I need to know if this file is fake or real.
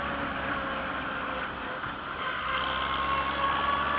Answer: real